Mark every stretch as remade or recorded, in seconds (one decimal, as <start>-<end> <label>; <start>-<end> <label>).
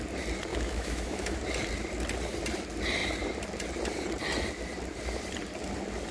0.0-0.5 recorded; 0.5-1.4 remade; 1.4-6.1 recorded